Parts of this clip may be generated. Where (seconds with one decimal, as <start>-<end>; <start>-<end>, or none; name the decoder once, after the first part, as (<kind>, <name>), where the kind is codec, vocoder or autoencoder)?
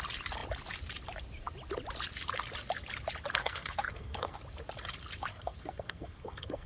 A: 3.4-4.4 (codec, SNAC); 5.3-6.7